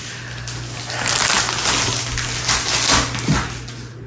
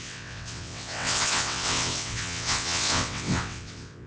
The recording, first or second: first